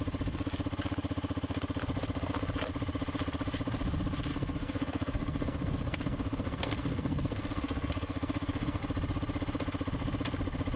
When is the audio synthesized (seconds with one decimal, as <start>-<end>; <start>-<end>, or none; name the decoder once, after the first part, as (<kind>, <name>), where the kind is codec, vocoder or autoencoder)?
4.3-8.8 (codec, SNAC)